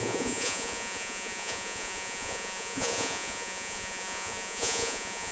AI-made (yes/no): yes